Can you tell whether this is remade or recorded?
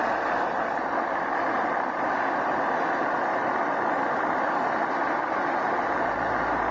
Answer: recorded